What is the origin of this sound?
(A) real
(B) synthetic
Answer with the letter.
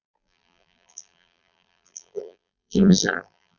B